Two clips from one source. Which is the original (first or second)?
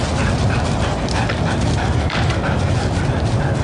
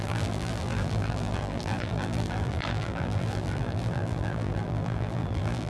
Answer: first